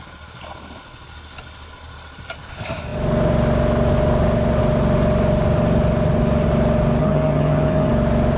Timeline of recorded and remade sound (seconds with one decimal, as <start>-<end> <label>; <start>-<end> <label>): 0.0-7.0 recorded; 7.0-7.9 remade; 7.9-8.4 recorded